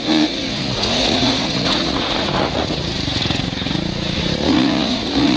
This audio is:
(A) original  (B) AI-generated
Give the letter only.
B